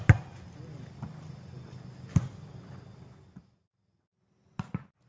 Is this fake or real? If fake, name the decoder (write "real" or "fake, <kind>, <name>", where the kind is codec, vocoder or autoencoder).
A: real